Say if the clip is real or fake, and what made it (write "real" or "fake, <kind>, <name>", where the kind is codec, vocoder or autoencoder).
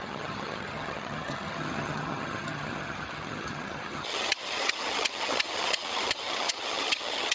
fake, vocoder, HiFi-GAN